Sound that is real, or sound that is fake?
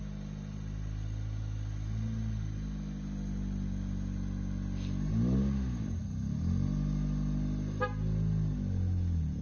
real